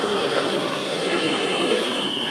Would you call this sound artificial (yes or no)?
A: yes